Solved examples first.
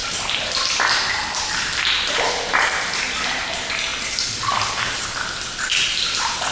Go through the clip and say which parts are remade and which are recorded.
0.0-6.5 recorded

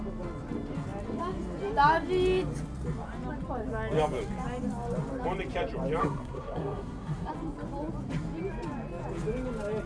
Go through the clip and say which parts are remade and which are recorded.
0.0-6.0 recorded; 6.0-7.3 remade; 7.3-9.9 recorded

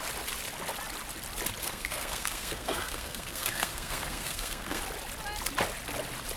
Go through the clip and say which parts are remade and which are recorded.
0.0-1.6 recorded; 1.6-4.8 remade; 4.8-6.4 recorded

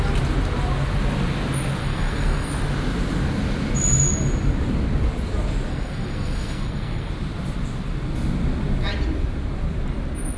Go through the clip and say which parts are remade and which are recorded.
0.0-1.8 recorded; 1.8-2.5 remade; 2.5-5.7 recorded; 5.7-7.1 remade; 7.1-10.4 recorded

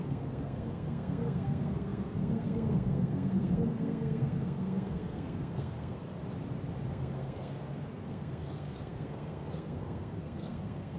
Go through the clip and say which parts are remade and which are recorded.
0.0-6.1 remade; 6.1-6.9 recorded; 6.9-11.0 remade